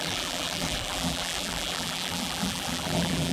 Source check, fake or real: fake